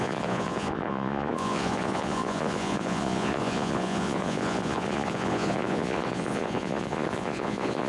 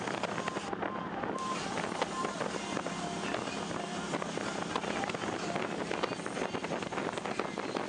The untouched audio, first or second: second